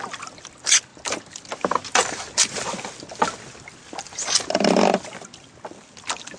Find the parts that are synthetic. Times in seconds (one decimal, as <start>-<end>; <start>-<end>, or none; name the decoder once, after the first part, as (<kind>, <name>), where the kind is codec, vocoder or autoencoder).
none